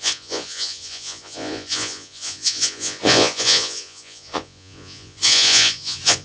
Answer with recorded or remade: remade